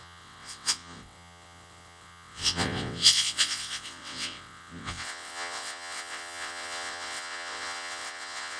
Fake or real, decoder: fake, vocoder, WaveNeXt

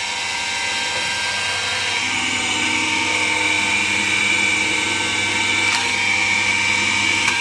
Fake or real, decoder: real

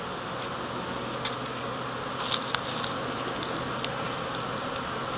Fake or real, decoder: real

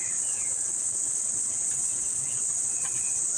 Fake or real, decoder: fake, vocoder, WaveNeXt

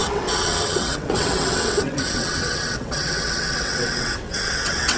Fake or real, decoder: fake, vocoder, WaveNeXt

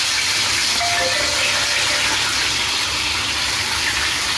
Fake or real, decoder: real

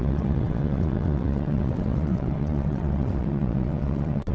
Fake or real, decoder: fake, vocoder, WaveNeXt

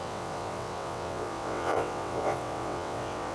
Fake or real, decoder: fake, vocoder, WaveNeXt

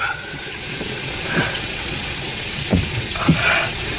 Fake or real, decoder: fake, vocoder, WaveNeXt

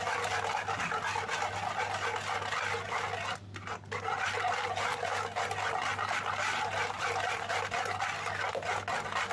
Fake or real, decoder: real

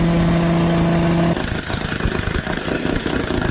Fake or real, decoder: real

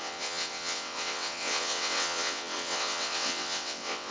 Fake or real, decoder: fake, vocoder, WaveNeXt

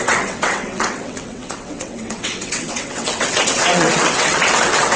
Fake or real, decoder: fake, vocoder, WaveNeXt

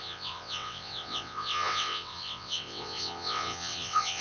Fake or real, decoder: fake, vocoder, WaveNeXt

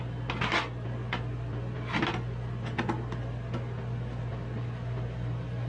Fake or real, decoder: real